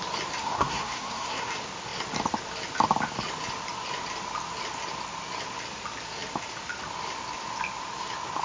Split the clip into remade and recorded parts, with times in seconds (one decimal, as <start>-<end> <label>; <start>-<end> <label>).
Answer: 0.0-0.4 recorded; 0.4-1.5 remade; 1.5-8.4 recorded